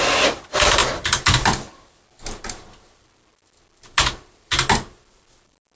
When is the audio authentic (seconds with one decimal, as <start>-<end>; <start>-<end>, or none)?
0.0-5.8